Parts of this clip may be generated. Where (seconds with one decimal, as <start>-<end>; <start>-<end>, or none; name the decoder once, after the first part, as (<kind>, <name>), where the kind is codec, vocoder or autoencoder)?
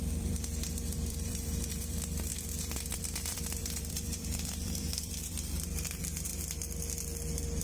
0.0-6.3 (vocoder, BigVGAN v2)